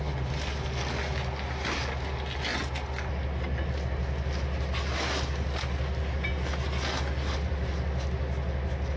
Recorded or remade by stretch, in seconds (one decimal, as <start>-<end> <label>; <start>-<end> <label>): 0.0-9.0 recorded

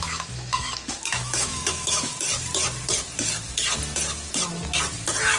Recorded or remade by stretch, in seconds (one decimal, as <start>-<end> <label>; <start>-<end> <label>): 0.0-2.1 remade; 2.1-5.4 recorded

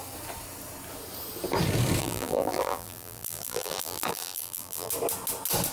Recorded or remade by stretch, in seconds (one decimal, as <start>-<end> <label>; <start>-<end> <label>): 0.0-2.0 recorded; 2.0-4.9 remade; 4.9-5.7 recorded

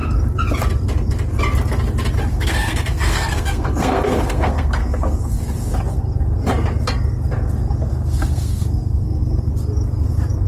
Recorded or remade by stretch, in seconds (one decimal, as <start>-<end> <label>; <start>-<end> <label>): 0.0-2.3 recorded; 2.3-5.4 remade; 5.4-7.9 recorded; 7.9-9.5 remade; 9.5-10.5 recorded